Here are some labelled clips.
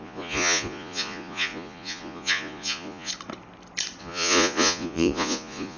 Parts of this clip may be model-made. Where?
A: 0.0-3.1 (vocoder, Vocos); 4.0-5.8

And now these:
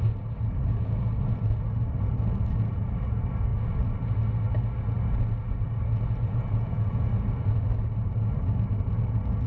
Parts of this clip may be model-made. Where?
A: 6.3-7.1 (vocoder, Vocos)

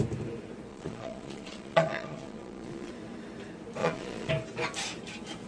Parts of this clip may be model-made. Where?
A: 0.7-2.9 (vocoder, Vocos); 3.8-4.3

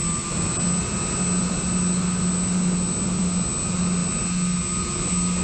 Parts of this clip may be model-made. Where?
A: none

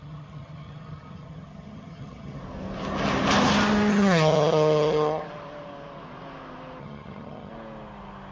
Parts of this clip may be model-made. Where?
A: 0.0-2.4 (vocoder, HiFi-GAN); 3.9-5.2; 6.8-7.5

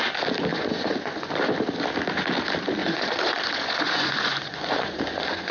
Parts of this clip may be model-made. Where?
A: 0.5-1.3 (vocoder, Vocos); 2.8-5.5

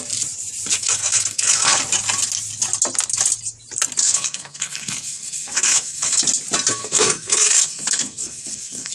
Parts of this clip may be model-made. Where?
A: 0.8-1.8 (codec, SNAC); 4.0-6.2; 6.8-8.9